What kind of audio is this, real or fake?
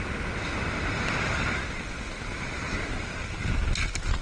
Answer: real